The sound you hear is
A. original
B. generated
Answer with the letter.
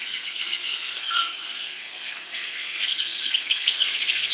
B